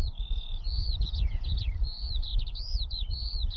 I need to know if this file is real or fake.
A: fake